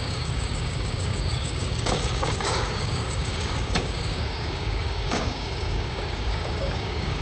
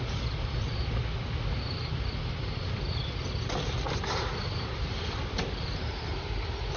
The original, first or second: second